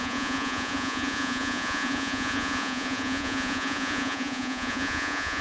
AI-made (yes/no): yes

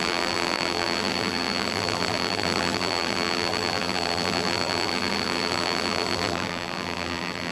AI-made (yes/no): yes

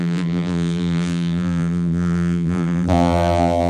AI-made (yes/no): yes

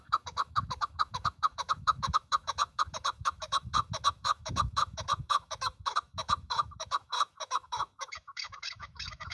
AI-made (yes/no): yes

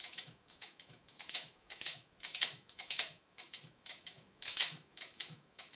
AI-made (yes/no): yes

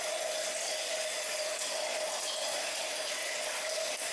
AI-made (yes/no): no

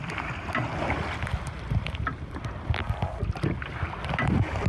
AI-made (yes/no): no